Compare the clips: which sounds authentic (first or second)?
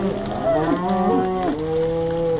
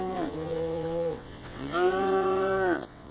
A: first